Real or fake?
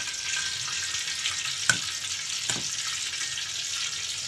real